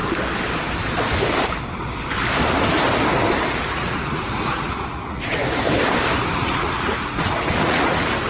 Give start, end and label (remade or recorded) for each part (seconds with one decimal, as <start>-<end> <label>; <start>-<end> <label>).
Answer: 0.0-3.5 recorded; 3.5-5.4 remade; 5.4-6.4 recorded; 6.4-8.3 remade